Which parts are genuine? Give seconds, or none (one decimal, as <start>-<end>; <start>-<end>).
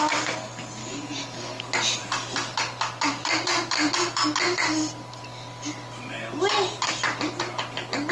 0.0-0.8; 1.6-8.1